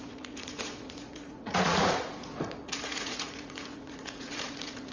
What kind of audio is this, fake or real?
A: fake